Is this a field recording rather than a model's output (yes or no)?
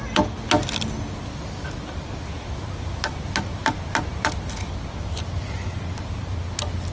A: yes